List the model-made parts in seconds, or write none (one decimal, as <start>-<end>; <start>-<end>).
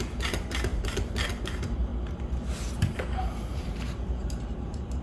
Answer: 0.0-0.7; 1.3-1.9; 2.7-5.0